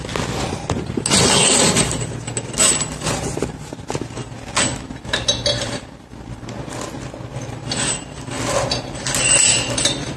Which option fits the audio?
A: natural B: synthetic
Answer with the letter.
A